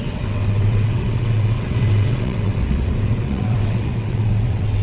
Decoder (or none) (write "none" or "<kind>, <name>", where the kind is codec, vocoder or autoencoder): vocoder, WaveNeXt